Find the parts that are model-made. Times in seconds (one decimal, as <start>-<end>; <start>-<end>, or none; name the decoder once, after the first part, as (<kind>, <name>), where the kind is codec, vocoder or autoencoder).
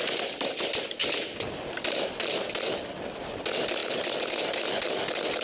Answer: none